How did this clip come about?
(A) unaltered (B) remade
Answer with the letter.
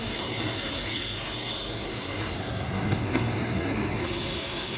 B